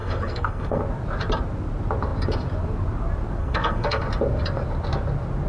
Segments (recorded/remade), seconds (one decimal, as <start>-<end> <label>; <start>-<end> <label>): 0.0-0.8 remade; 0.8-3.4 recorded; 3.4-4.0 remade; 4.0-5.5 recorded